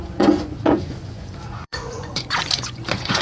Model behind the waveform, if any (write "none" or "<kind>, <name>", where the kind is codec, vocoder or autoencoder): vocoder, Vocos